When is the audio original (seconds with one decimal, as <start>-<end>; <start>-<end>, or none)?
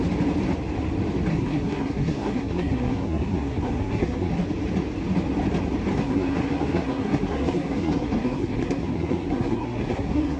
0.0-1.3; 4.3-5.9